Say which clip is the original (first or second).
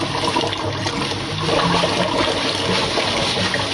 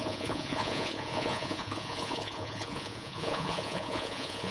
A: first